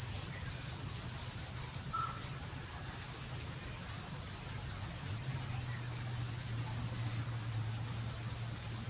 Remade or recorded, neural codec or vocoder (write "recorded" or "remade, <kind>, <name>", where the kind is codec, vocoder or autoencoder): recorded